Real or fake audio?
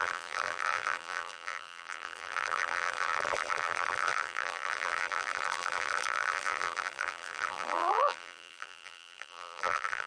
fake